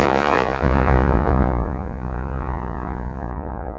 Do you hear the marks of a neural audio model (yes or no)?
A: yes